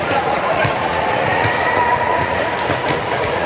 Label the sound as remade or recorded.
remade